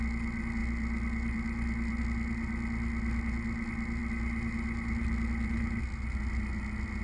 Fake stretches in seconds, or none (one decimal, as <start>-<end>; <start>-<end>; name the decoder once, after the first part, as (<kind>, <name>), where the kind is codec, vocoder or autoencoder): none